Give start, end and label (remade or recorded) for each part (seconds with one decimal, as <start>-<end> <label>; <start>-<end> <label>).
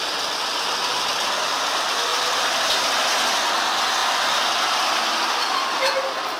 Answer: 0.0-2.1 recorded; 2.1-3.0 remade; 3.0-4.0 recorded; 4.0-6.4 remade